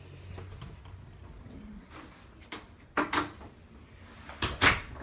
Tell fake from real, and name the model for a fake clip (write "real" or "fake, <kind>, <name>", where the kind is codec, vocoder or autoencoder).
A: real